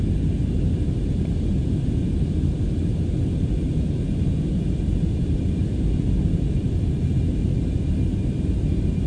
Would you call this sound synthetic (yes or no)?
no